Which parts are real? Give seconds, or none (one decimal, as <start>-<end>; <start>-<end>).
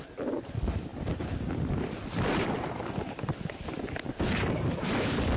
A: 0.0-5.4